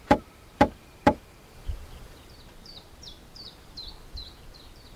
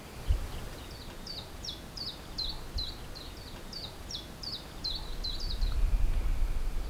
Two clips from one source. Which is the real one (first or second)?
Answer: second